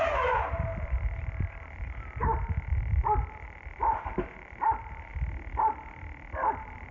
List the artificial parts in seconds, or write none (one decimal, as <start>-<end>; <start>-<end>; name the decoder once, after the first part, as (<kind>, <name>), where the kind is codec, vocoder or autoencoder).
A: 0.0-5.1 (vocoder, BigVGAN v2); 6.5-6.9